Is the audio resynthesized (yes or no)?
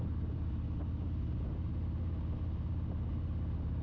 no